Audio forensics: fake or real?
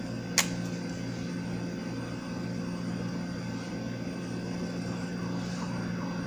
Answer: real